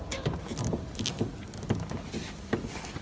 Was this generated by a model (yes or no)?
no